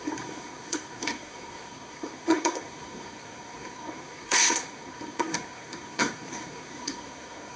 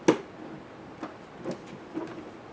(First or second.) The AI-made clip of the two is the first